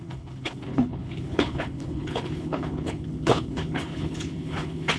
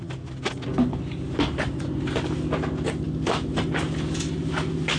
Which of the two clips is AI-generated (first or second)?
first